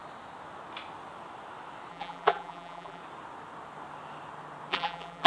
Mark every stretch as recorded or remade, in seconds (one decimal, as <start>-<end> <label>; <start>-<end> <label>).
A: 0.0-1.9 recorded; 1.9-3.0 remade; 3.0-4.7 recorded; 4.7-5.3 remade